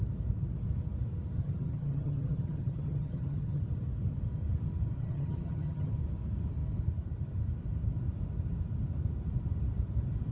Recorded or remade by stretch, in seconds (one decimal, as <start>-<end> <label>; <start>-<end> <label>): 0.0-1.4 recorded; 1.4-3.6 remade; 3.6-5.0 recorded; 5.0-5.9 remade; 5.9-10.3 recorded

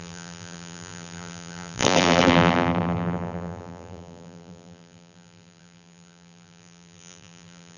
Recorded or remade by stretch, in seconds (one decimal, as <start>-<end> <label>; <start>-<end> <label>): 0.0-7.8 remade